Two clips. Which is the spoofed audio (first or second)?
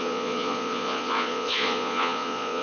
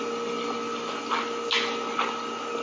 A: first